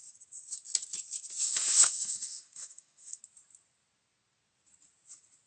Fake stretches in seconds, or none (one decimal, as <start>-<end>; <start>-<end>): 1.4-3.2